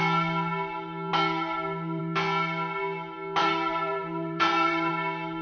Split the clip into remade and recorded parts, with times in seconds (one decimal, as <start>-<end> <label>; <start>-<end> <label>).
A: 0.0-3.4 recorded; 3.4-4.9 remade; 4.9-5.4 recorded